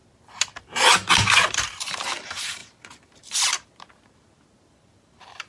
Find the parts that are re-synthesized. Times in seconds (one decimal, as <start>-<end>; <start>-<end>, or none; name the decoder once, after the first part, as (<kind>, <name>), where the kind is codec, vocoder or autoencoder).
0.6-2.6 (vocoder, BigVGAN v2); 4.7-5.5